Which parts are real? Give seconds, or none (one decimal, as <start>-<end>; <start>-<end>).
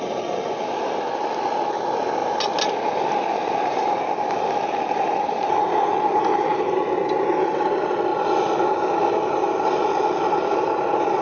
0.0-11.2